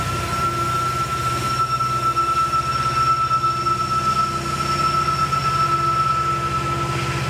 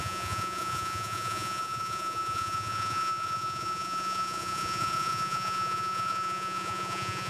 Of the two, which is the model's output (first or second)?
second